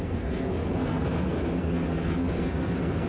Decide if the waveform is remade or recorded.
remade